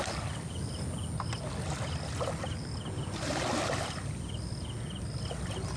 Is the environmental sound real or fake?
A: real